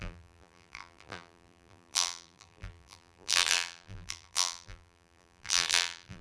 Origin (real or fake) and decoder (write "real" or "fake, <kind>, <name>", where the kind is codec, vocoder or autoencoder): fake, vocoder, BigVGAN v2